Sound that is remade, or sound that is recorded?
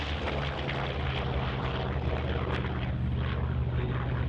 recorded